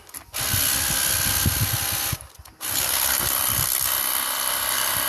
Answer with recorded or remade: recorded